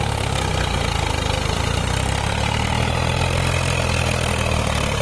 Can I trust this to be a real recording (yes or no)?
yes